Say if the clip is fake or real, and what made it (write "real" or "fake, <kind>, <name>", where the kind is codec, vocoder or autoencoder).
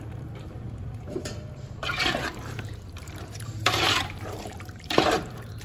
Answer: fake, vocoder, BigVGAN v2